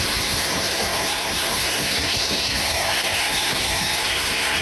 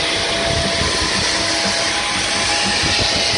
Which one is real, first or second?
second